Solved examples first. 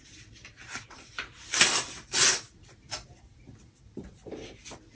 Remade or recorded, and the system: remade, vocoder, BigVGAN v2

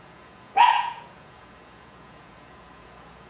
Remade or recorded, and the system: remade, vocoder, Vocos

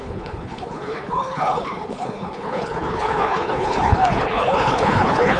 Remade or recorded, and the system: remade, codec, HILCodec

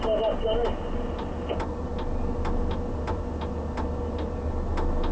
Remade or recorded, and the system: recorded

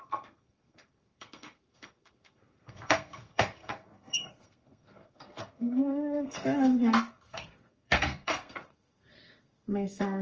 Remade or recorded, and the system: remade, codec, SNAC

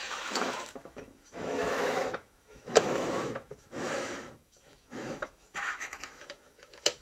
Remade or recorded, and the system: remade, autoencoder, DAC-VAE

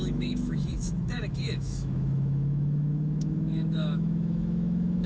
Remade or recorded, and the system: remade, autoencoder, DAC-VAE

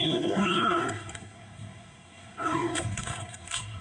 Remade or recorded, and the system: remade, codec, SNAC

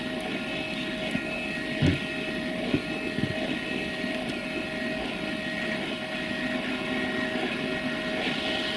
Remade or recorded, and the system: recorded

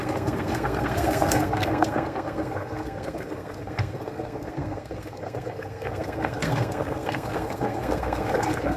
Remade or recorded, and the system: remade, codec, SNAC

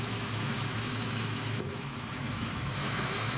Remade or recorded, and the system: remade, autoencoder, DAC-VAE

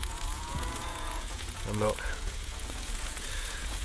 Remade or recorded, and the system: remade, vocoder, Vocos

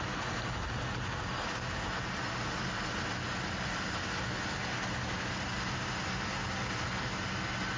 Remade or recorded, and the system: recorded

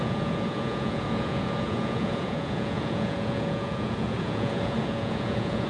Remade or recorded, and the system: remade, vocoder, Vocos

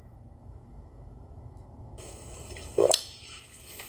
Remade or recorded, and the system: remade, autoencoder, DAC-VAE